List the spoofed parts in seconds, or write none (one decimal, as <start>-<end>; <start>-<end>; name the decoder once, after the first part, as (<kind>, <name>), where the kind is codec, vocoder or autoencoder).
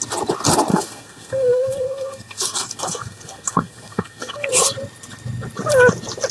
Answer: 0.7-4.5 (codec, SNAC)